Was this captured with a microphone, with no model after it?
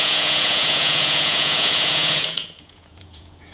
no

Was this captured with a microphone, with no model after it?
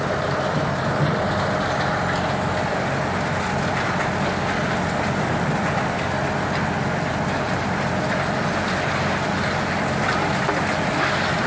yes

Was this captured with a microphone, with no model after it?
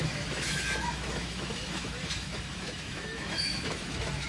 no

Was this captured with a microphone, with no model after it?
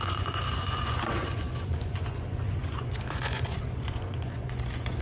no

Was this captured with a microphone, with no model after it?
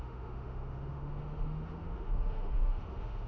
no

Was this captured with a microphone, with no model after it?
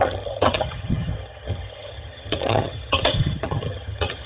no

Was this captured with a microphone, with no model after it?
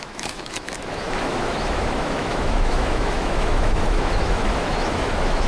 no